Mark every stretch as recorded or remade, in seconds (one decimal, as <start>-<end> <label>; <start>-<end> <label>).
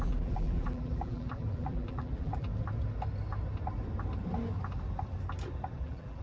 0.0-2.5 remade; 2.5-5.8 recorded; 5.8-6.2 remade